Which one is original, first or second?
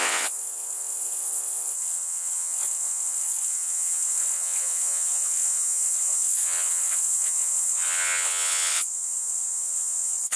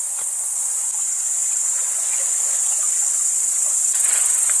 second